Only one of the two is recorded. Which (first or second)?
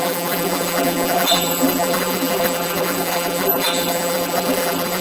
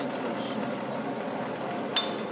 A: second